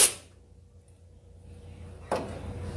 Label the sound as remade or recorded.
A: recorded